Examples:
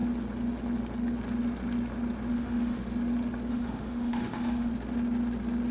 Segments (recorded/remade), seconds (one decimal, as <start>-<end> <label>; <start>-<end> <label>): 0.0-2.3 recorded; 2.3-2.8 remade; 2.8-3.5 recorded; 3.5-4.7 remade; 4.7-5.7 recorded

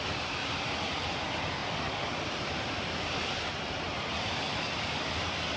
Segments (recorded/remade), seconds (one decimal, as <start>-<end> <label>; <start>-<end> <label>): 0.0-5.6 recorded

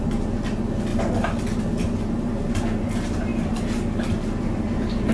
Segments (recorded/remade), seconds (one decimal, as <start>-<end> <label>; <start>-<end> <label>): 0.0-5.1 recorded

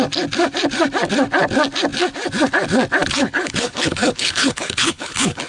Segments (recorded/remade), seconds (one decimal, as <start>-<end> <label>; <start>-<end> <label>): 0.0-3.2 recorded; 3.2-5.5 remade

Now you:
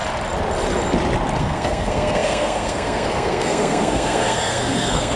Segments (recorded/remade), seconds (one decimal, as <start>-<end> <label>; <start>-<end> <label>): 0.0-1.4 recorded; 1.4-5.2 remade